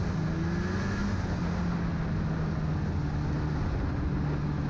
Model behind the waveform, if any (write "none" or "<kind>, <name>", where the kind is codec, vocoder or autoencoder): none